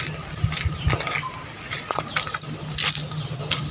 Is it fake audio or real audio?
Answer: real